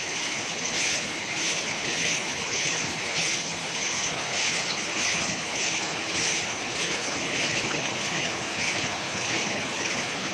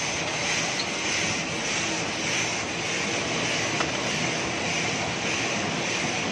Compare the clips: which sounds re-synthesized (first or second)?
first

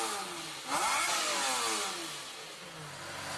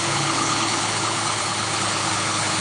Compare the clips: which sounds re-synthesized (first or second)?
second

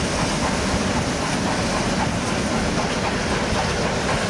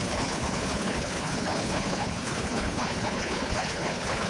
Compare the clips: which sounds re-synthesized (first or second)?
second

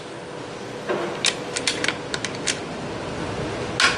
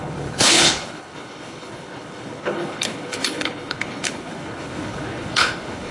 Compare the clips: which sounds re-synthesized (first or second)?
second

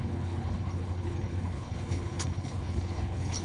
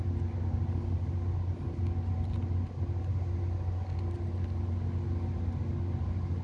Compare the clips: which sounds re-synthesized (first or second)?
first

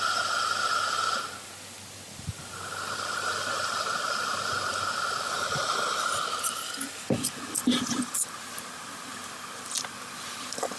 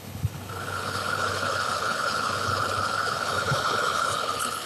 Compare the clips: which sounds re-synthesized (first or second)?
second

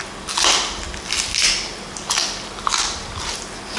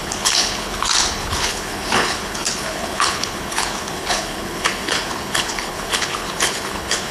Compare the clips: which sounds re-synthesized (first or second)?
second